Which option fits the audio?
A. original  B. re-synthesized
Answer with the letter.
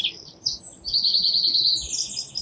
A